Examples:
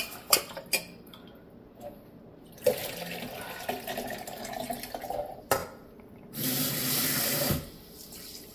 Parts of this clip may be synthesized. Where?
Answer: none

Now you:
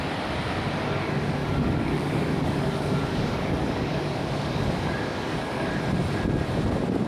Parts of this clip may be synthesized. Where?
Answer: 1.4-5.7 (codec, DAC)

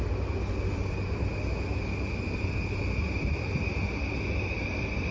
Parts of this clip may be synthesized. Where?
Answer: none

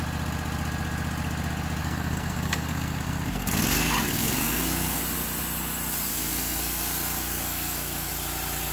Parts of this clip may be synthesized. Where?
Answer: 1.8-5.0 (codec, SNAC); 6.1-8.1